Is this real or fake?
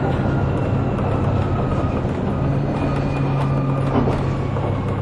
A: real